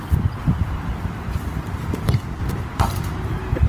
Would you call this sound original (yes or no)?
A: no